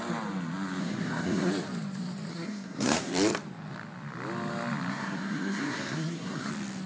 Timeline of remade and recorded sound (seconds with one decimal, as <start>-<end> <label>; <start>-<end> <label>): 0.0-0.8 recorded; 0.8-1.5 remade; 1.5-2.3 recorded; 2.3-3.1 remade; 3.1-4.9 recorded; 4.9-6.5 remade; 6.5-6.9 recorded